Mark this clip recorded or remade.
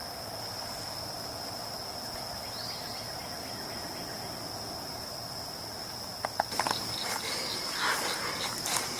recorded